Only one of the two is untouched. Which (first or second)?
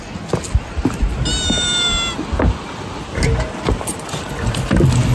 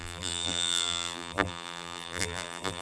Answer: first